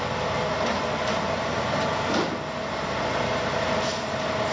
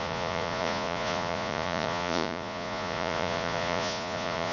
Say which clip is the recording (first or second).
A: first